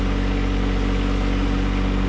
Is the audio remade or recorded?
recorded